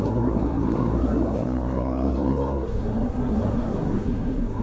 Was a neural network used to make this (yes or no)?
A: yes